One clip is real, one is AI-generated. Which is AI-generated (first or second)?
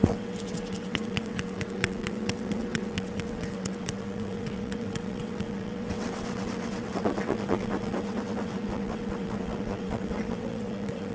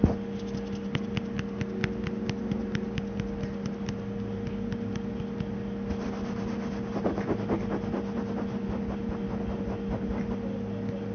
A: first